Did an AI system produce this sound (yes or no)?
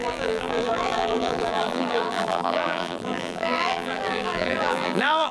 yes